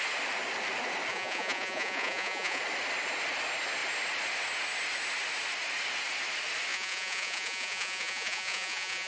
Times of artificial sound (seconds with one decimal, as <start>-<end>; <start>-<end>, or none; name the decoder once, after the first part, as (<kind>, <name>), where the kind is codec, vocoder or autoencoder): 1.1-2.6 (vocoder, Vocos); 6.7-9.1